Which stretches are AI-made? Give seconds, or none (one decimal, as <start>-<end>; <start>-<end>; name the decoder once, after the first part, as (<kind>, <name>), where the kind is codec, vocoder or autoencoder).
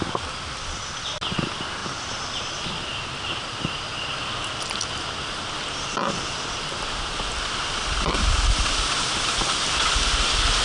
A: none